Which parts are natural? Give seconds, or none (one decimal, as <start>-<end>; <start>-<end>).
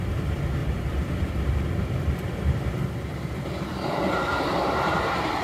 0.0-0.6; 2.1-3.1; 4.6-5.4